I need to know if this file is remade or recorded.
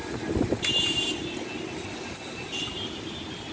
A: recorded